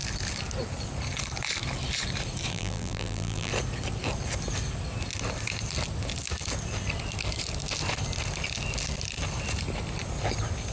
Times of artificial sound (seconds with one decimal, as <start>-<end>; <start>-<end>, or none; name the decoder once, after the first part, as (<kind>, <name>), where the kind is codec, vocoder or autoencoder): 2.5-3.5 (vocoder, BigVGAN v2)